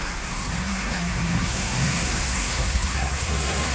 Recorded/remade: remade